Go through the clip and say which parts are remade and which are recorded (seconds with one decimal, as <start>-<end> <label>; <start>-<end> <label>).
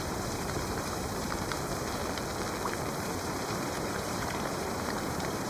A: 0.0-2.0 remade; 2.0-2.9 recorded; 2.9-5.5 remade